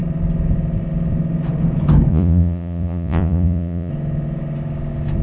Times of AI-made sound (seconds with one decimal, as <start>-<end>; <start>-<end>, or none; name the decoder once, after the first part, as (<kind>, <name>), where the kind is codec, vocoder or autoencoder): 2.1-3.9 (vocoder, Vocos)